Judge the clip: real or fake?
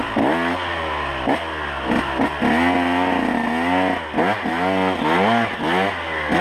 real